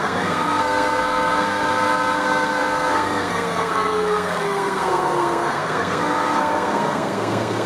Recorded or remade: remade